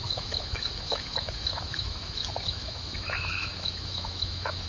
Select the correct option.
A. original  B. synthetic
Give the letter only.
B